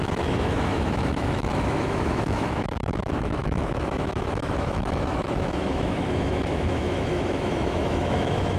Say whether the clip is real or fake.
fake